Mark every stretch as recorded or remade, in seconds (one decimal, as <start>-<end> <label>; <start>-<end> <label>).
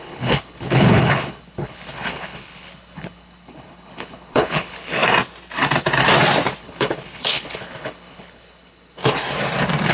0.0-5.0 remade; 5.0-6.6 recorded; 6.6-9.0 remade; 9.0-9.9 recorded